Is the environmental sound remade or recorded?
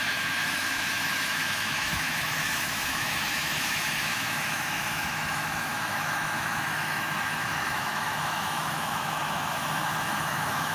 remade